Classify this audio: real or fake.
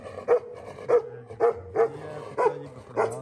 real